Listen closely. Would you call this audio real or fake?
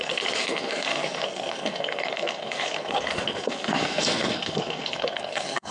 fake